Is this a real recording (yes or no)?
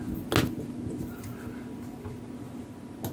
yes